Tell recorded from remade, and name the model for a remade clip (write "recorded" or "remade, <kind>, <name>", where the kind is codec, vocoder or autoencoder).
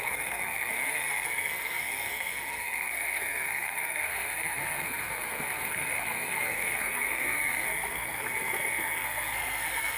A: remade, codec, SNAC